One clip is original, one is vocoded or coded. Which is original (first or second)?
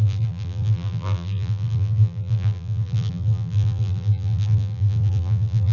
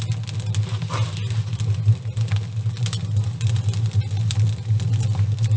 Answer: second